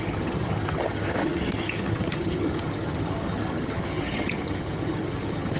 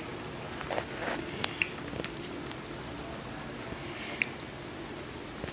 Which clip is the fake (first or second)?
first